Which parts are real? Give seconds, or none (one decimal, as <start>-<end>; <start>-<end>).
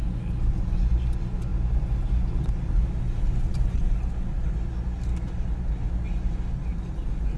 0.0-7.4